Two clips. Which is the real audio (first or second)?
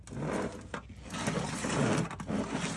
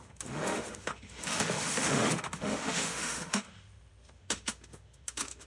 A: first